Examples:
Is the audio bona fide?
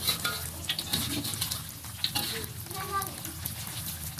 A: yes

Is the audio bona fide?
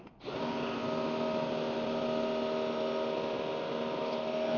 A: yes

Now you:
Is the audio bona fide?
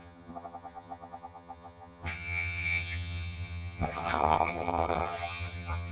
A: no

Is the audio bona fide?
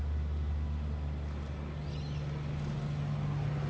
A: yes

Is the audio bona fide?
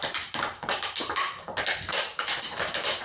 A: no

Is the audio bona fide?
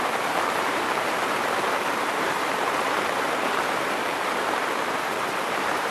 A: no